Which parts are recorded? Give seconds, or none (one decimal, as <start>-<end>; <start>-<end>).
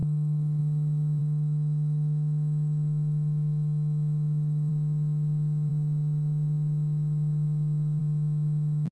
0.6-1.2; 4.7-8.9